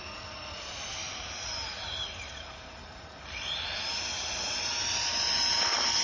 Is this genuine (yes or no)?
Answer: no